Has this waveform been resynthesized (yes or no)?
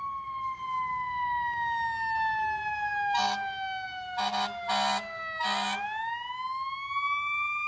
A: no